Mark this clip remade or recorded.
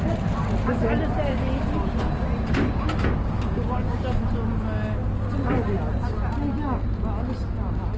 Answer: recorded